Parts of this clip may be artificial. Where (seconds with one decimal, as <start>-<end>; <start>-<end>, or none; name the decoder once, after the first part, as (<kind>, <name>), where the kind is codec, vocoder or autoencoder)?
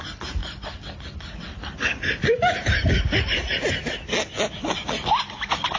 0.4-2.6 (vocoder, BigVGAN v2); 4.5-5.8